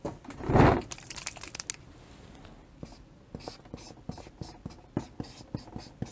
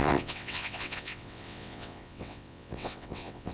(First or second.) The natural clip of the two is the first